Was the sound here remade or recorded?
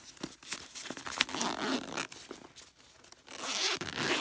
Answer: recorded